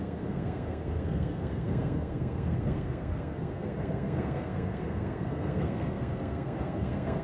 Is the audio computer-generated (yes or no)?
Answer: yes